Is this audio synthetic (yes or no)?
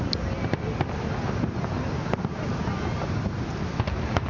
no